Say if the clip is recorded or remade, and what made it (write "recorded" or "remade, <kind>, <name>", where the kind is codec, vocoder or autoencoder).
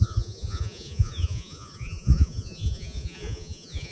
remade, vocoder, Vocos